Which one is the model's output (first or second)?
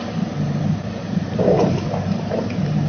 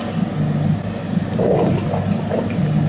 first